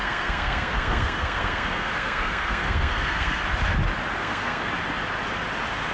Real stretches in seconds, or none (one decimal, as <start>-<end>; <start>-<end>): 3.4-4.2; 4.7-5.9